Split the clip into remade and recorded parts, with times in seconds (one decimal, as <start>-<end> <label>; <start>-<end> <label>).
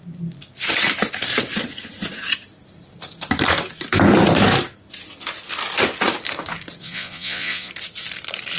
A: 0.0-6.8 recorded; 6.8-7.7 remade; 7.7-8.6 recorded